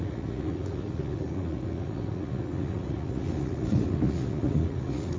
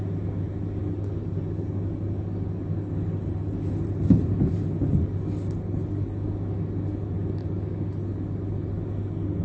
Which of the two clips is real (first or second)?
second